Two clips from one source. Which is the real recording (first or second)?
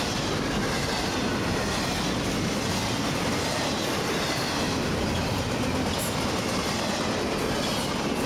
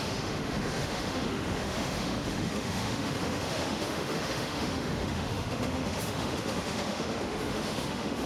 first